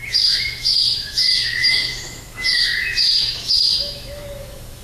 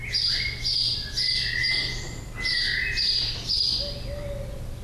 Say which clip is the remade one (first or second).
first